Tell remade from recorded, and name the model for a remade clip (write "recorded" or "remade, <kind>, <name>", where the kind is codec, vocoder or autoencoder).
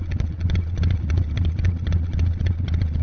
remade, vocoder, Vocos